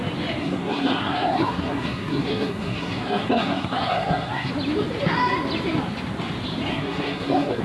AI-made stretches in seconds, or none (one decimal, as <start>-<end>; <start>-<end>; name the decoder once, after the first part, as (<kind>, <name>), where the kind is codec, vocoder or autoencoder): 0.4-4.5 (codec, SNAC); 6.7-7.6